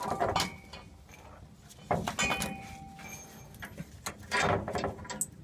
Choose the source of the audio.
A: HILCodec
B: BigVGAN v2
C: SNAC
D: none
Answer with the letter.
D